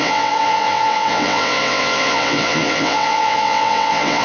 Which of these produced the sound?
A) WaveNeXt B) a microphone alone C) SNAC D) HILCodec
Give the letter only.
A